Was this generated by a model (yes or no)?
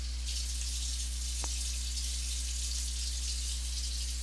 no